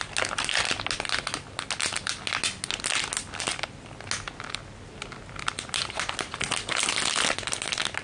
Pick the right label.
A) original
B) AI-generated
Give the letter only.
A